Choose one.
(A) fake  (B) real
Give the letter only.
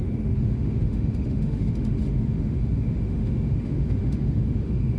A